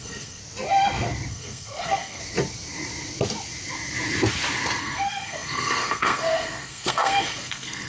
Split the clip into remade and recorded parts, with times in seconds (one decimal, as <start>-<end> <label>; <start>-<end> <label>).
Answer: 0.0-0.4 remade; 0.4-1.3 recorded; 1.3-2.2 remade; 2.2-4.8 recorded; 4.8-7.9 remade

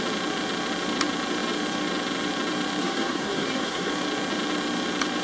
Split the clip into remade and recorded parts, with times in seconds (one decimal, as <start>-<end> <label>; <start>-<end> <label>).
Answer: 0.0-2.8 recorded; 2.8-3.9 remade; 3.9-5.2 recorded

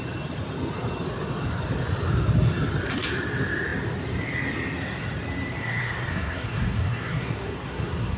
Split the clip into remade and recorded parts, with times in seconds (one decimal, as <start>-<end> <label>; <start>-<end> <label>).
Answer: 0.0-5.6 recorded; 5.6-8.2 remade

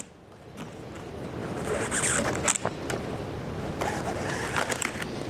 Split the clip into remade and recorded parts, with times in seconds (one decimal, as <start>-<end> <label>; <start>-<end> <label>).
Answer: 0.0-5.3 recorded

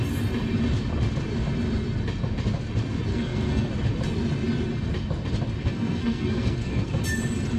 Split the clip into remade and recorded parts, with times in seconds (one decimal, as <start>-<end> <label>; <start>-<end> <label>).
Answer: 0.0-3.1 recorded; 3.1-3.7 remade; 3.7-5.6 recorded; 5.6-7.0 remade; 7.0-7.6 recorded